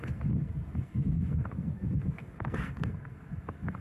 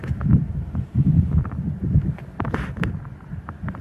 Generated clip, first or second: first